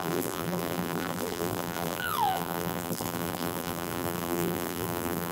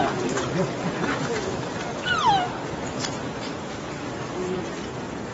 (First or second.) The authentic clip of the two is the second